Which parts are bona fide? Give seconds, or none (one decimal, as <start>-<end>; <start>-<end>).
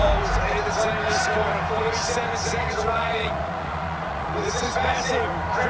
0.0-2.6; 5.1-5.7